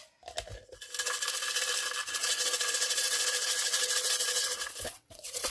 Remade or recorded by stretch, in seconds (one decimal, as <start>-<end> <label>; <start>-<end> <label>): 0.0-2.2 recorded; 2.2-5.5 remade